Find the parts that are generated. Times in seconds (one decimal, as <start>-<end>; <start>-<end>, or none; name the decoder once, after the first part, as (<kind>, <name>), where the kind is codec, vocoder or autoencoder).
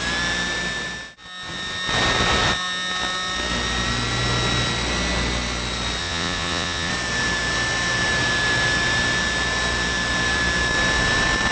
6.0-6.9 (vocoder, Vocos)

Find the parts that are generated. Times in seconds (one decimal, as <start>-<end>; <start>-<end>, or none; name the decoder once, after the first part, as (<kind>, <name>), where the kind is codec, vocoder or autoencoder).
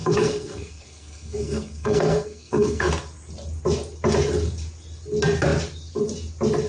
0.0-2.9 (codec, SNAC)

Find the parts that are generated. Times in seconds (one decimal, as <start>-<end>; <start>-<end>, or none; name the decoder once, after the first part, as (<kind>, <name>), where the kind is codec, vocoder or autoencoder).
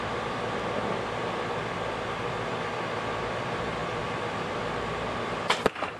0.0-6.0 (vocoder, BigVGAN v2)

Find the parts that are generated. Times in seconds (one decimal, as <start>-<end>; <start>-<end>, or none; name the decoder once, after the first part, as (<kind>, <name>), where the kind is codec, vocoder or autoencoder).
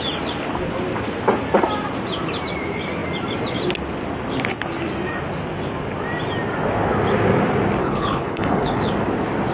7.8-8.9 (codec, HILCodec)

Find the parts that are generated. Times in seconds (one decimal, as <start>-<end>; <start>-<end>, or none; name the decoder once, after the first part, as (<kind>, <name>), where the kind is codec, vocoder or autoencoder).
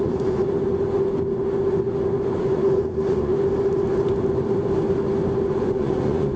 0.0-0.4 (vocoder, Vocos); 2.4-3.3; 5.5-6.4